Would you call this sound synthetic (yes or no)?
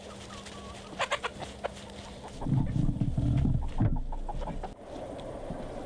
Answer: no